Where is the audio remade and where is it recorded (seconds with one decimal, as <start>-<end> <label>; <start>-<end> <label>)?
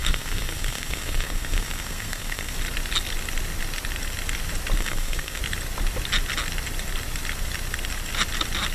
0.0-2.5 remade; 2.5-4.8 recorded; 4.8-5.4 remade; 5.4-8.7 recorded